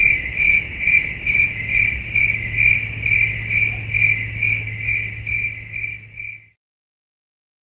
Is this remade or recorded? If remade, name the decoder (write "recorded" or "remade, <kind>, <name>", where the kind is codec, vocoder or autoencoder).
recorded